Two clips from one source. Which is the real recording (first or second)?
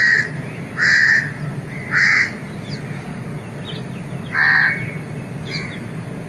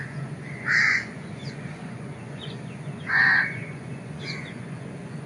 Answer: first